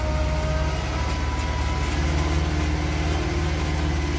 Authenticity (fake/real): real